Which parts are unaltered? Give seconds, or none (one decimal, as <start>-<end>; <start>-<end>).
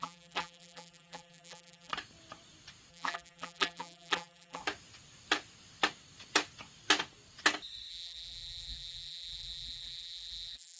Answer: 1.9-2.9; 4.6-7.9